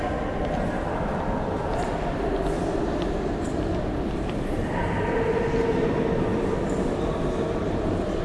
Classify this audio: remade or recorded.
recorded